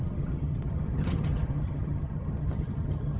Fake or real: fake